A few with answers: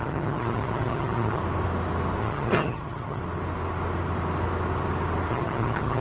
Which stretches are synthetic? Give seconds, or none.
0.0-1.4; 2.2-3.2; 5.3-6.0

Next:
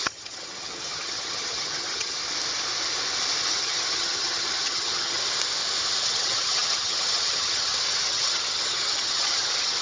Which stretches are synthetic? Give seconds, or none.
0.0-2.2; 3.5-5.2; 6.0-9.8

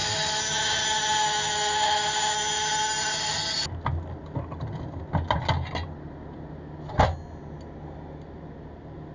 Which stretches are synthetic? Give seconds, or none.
none

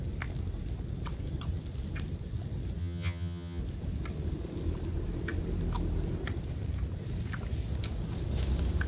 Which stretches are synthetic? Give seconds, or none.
2.8-3.6

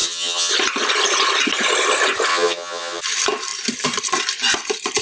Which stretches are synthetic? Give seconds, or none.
0.0-0.5; 2.3-3.0

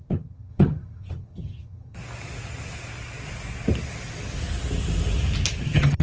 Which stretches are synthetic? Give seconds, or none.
0.0-2.0; 5.6-6.0